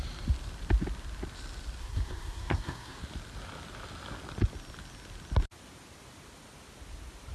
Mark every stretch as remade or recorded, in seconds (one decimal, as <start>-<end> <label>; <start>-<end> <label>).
0.0-1.8 recorded; 1.8-3.0 remade; 3.0-7.3 recorded